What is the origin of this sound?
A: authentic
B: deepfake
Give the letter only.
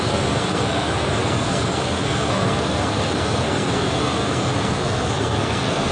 B